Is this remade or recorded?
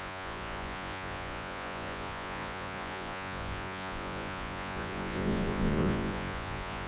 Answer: remade